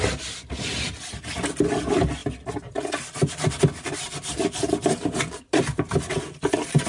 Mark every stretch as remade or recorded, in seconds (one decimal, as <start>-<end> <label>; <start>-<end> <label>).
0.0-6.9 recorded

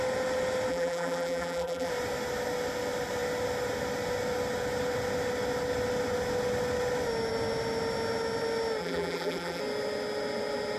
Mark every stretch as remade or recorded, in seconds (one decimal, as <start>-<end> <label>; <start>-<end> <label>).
0.0-0.7 recorded; 0.7-1.9 remade; 1.9-8.8 recorded; 8.8-9.6 remade; 9.6-10.8 recorded

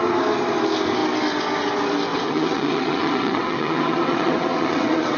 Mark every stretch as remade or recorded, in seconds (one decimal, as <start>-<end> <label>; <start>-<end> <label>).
0.0-2.1 recorded; 2.1-5.2 remade